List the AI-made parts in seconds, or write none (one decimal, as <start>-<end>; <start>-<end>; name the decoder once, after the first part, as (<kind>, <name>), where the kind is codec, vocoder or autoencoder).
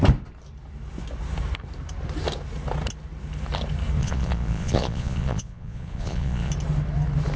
4.0-6.5 (vocoder, Vocos)